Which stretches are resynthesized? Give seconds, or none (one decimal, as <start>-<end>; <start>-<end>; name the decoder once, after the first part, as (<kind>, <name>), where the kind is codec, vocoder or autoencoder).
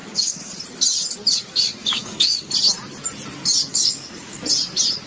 0.0-0.5 (codec, DAC); 1.8-2.5; 3.7-4.4